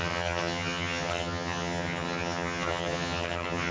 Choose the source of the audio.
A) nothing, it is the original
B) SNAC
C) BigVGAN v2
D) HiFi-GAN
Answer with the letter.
D